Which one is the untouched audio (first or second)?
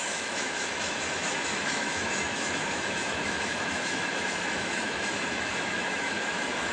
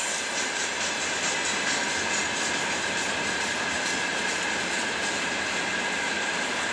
second